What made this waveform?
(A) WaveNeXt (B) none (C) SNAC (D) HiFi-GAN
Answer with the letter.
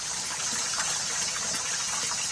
B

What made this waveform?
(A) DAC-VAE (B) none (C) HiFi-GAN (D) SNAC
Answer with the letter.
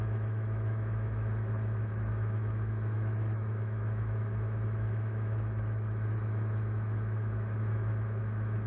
A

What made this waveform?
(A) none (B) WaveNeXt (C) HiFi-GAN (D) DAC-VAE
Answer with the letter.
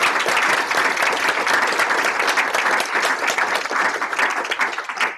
A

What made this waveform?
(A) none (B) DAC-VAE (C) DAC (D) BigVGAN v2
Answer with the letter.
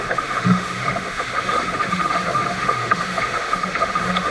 B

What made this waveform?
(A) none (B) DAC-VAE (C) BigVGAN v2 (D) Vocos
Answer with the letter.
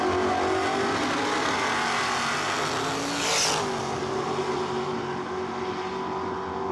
A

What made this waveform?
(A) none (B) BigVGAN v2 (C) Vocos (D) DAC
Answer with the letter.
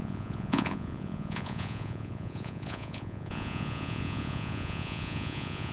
C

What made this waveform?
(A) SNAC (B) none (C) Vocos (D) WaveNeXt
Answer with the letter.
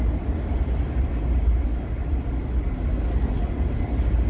B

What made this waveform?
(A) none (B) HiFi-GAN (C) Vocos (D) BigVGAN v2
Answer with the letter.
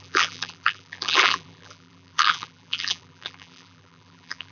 D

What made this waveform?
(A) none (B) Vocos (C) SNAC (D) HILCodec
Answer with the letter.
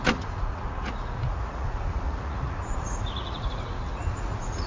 B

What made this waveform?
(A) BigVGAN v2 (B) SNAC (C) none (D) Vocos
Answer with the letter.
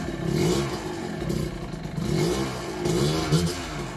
C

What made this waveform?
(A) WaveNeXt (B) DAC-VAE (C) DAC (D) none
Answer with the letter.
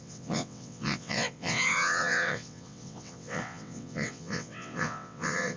A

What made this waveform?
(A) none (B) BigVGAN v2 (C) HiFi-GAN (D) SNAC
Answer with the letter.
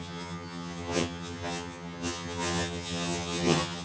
C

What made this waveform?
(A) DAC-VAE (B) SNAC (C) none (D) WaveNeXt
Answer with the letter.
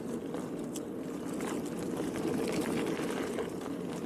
C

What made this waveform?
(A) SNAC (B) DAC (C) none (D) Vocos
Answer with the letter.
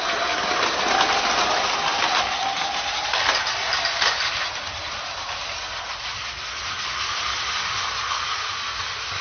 C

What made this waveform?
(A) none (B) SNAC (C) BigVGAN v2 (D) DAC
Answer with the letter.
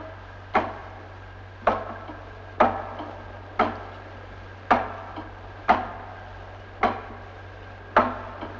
C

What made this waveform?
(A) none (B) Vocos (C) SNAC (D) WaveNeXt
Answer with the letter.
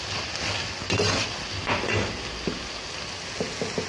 A